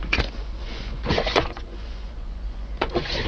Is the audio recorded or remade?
remade